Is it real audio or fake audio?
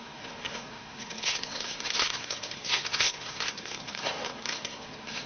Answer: fake